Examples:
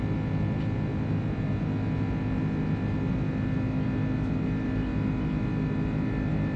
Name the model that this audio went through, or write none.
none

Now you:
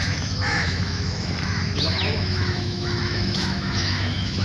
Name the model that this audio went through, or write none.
autoencoder, DAC-VAE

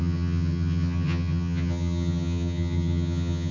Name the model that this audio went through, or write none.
vocoder, HiFi-GAN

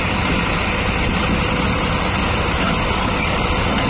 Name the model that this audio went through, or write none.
none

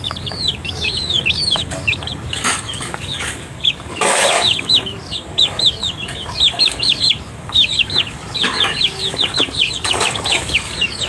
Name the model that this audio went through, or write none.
codec, DAC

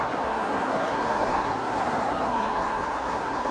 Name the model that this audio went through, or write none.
codec, SNAC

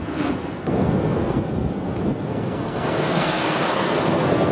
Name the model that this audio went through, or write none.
codec, SNAC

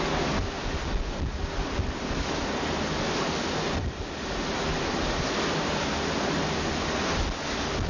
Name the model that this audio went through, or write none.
none